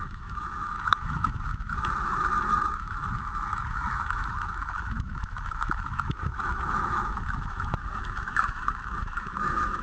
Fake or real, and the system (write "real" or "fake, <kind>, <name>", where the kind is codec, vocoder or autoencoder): fake, autoencoder, DAC-VAE